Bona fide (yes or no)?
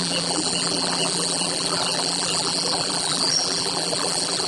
no